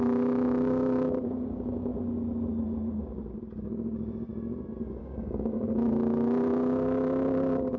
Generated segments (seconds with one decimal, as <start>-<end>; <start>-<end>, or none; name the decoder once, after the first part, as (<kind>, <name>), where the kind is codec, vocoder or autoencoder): 0.0-1.9 (codec, DAC); 3.6-4.3; 5.0-7.8